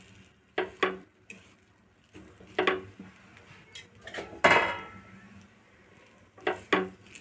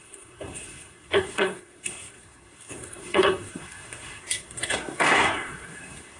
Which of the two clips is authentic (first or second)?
first